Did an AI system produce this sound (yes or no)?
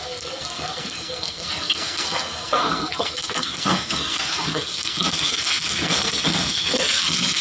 yes